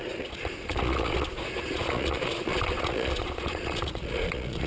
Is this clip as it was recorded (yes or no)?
no